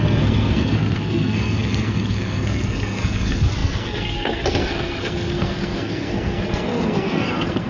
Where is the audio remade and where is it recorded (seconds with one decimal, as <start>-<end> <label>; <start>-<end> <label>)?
0.0-7.7 remade